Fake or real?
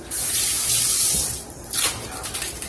fake